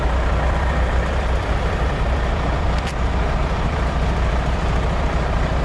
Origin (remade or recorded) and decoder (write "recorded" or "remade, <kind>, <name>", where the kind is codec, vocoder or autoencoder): remade, vocoder, BigVGAN v2